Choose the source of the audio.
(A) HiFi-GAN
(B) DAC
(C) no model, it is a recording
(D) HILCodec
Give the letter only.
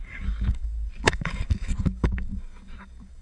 B